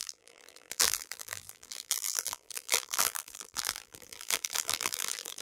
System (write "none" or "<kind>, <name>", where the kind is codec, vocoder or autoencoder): vocoder, BigVGAN v2